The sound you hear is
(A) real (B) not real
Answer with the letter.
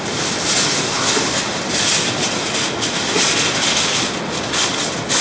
A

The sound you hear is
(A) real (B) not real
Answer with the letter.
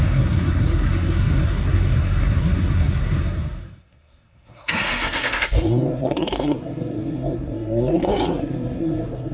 B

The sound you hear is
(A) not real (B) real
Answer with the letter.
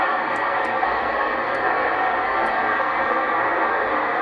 A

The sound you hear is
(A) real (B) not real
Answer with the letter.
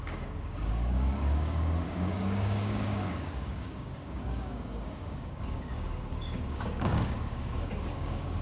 B